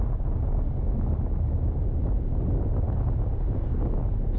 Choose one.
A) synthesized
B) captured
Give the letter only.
B